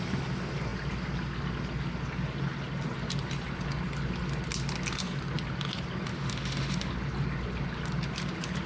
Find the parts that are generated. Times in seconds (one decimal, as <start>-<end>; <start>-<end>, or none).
6.1-6.9